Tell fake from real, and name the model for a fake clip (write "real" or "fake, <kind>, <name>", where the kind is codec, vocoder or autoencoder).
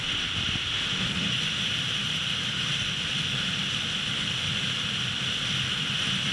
real